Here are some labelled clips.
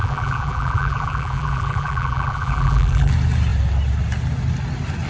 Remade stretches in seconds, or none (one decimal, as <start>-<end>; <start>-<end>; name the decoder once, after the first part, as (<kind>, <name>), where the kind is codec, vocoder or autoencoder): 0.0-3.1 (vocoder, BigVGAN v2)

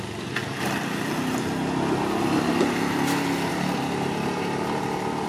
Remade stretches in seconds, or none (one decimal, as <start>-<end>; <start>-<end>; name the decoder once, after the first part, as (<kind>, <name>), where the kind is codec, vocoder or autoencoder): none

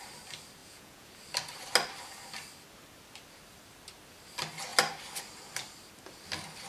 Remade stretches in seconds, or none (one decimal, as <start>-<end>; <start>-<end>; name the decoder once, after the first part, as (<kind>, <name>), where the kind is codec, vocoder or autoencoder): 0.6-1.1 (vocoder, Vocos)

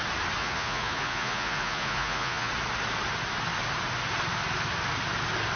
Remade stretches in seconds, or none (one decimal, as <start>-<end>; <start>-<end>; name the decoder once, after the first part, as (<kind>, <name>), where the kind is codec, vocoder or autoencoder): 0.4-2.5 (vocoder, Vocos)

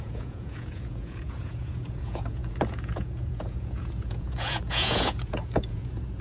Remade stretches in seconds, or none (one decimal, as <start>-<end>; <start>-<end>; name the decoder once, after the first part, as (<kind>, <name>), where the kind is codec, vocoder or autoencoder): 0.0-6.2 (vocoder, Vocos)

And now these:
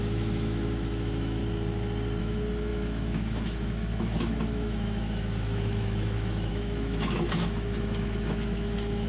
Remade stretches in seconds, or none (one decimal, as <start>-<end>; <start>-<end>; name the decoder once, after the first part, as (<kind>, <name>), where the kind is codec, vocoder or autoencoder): 0.0-1.4 (autoencoder, DAC-VAE); 2.2-9.1